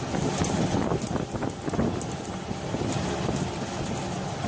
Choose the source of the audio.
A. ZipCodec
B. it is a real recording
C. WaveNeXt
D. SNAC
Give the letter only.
B